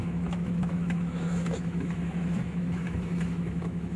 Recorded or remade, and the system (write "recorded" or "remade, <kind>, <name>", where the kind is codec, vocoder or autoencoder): remade, autoencoder, DAC-VAE